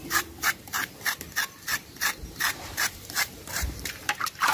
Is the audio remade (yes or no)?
yes